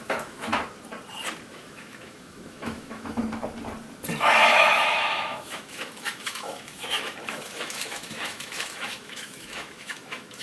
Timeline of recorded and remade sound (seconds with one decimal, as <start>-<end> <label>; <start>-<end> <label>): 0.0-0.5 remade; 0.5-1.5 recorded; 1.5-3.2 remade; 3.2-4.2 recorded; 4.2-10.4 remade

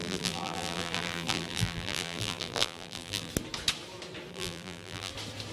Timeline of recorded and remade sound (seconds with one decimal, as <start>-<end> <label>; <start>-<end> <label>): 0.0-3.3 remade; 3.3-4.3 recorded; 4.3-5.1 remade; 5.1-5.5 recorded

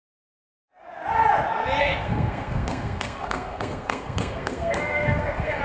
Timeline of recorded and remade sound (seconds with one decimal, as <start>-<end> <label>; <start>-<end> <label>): 0.0-1.8 recorded; 1.8-5.6 remade

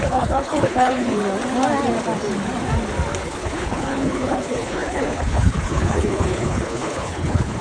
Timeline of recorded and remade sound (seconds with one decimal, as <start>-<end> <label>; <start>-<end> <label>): 0.0-1.2 remade; 1.2-3.2 recorded; 3.2-7.6 remade